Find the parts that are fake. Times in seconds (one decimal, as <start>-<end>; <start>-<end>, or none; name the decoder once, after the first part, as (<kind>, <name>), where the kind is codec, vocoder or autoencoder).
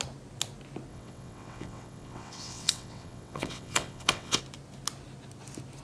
0.9-4.4 (vocoder, WaveNeXt)